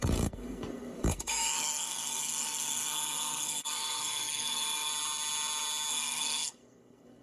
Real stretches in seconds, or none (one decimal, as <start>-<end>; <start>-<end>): 4.9-5.9